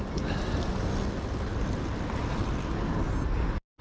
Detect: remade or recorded recorded